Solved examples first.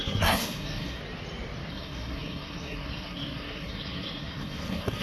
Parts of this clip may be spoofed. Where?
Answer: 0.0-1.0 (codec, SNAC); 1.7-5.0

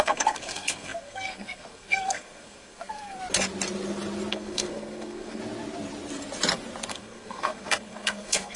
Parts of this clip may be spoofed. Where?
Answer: 0.0-3.2 (codec, SNAC); 4.3-5.4; 6.9-8.6